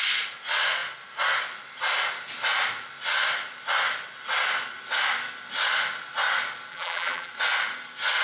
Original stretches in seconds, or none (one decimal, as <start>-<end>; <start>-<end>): 0.0-6.7; 7.3-8.2

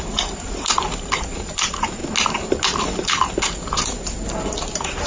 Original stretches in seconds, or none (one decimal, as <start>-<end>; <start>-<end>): 2.0-3.4

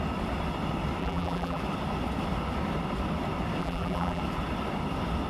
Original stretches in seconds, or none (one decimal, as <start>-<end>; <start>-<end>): 0.0-1.0; 1.6-3.6; 4.2-5.3

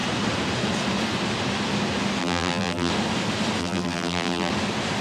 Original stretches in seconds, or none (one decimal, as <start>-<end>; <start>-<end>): 0.0-2.2; 2.9-3.6; 4.5-5.0

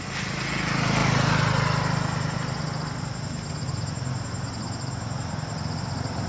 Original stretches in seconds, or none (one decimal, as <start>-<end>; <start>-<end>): 0.0-6.3

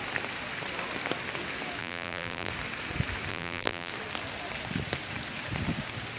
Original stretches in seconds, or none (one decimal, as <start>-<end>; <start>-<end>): 0.0-1.8; 2.5-3.3; 3.9-6.2

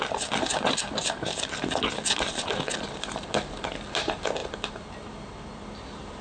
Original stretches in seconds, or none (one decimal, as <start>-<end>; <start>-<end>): 0.0-6.2